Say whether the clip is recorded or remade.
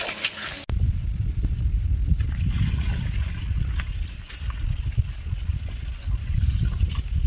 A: recorded